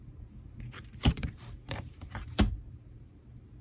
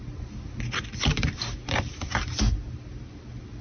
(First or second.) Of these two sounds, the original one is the second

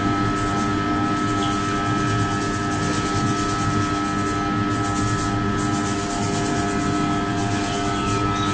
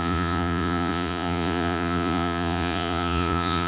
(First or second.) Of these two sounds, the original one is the first